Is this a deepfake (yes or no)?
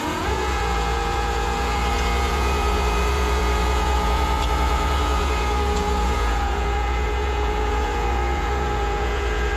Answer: yes